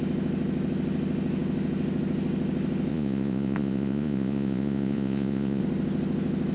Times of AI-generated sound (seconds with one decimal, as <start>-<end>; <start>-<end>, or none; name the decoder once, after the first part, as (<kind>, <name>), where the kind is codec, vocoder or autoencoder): 2.9-5.6 (vocoder, Vocos)